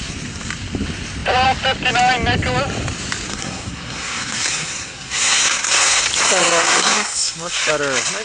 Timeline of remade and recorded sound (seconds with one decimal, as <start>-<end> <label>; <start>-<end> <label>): 0.0-3.3 recorded; 3.3-6.0 remade; 6.0-6.4 recorded; 6.4-7.7 remade; 7.7-8.2 recorded